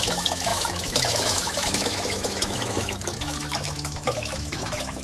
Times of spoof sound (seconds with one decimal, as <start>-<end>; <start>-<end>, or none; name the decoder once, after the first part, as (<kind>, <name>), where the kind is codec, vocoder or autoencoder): 0.0-5.0 (autoencoder, DAC-VAE)